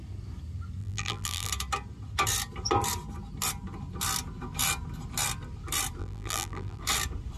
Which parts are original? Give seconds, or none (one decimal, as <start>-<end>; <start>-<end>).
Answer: 0.0-0.8; 1.5-6.0; 6.8-7.4